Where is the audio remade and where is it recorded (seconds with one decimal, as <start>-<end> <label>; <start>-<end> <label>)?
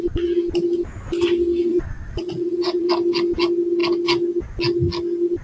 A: 0.0-1.7 recorded; 1.7-2.9 remade; 2.9-5.4 recorded